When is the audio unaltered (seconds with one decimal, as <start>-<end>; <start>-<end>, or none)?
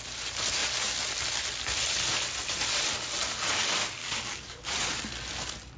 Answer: 0.0-4.0; 5.0-5.8